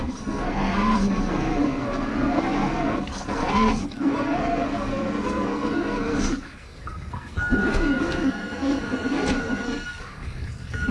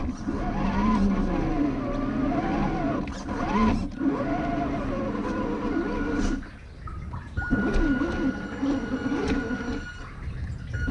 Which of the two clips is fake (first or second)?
first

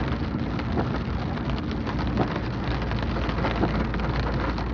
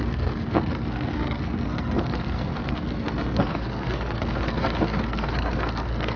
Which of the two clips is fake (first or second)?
second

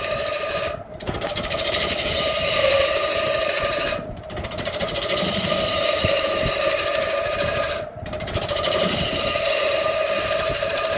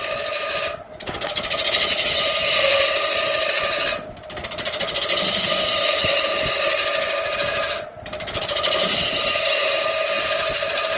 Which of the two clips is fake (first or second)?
first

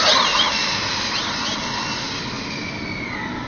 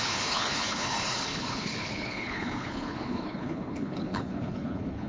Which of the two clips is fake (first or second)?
second